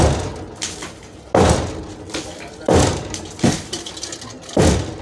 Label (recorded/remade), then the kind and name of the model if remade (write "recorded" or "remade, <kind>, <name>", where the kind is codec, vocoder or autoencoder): recorded